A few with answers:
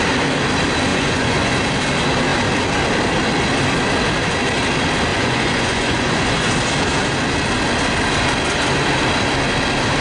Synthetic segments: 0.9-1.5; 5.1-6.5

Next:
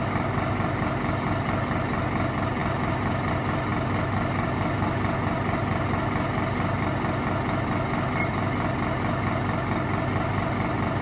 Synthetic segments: none

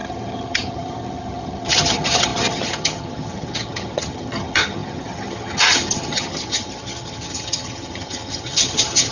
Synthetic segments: 0.0-9.1

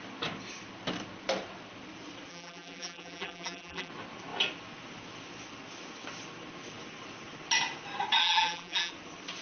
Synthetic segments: 2.3-3.9; 8.2-8.9

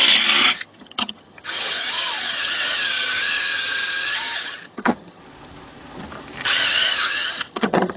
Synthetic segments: 0.4-5.2; 6.7-8.0

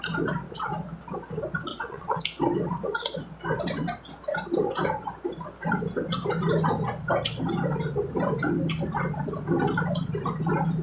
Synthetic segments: 1.7-2.2

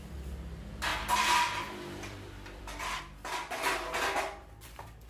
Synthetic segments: 0.9-3.0; 4.4-5.1

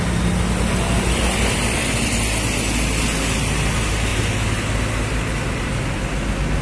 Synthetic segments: none